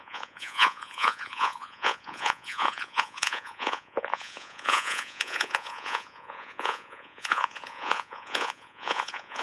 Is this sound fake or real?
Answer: fake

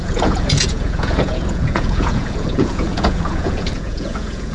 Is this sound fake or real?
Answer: fake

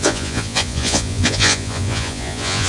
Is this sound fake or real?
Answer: fake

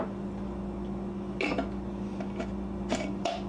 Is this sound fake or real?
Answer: real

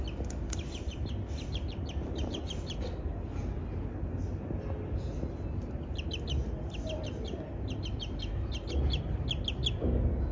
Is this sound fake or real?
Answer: real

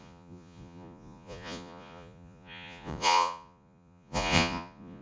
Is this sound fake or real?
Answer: fake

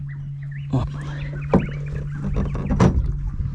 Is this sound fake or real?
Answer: real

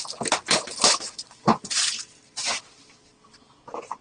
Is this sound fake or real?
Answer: real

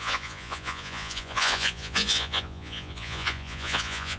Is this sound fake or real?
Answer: fake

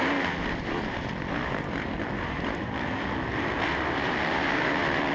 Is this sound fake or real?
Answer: real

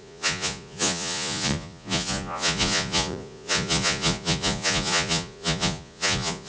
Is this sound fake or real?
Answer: fake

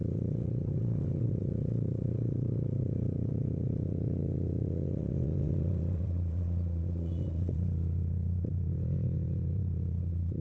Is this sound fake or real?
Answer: fake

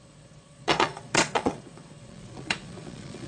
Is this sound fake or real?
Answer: fake